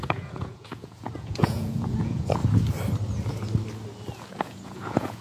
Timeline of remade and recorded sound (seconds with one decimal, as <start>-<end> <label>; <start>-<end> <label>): 0.0-2.4 remade; 2.4-4.3 recorded; 4.3-5.2 remade